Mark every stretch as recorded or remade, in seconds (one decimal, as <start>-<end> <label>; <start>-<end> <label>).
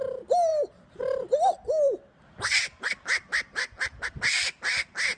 0.0-5.2 recorded